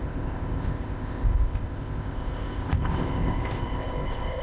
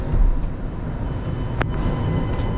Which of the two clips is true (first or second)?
second